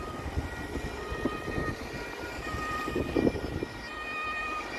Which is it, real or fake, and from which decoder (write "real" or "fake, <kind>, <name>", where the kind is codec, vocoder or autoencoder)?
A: real